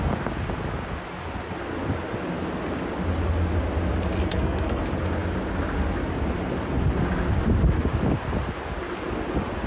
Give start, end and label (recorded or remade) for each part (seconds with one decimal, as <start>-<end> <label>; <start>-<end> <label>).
0.0-4.2 recorded; 4.2-4.8 remade; 4.8-9.7 recorded